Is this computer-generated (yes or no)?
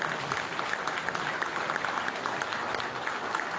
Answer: no